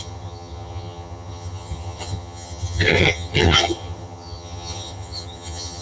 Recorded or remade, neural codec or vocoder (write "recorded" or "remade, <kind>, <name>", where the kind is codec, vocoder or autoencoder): remade, vocoder, HiFi-GAN